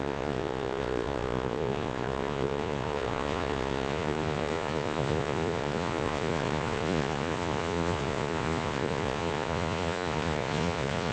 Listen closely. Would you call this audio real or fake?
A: fake